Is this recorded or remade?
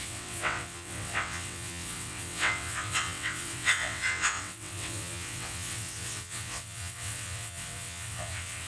remade